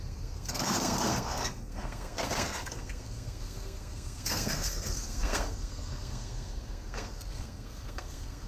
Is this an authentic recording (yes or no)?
no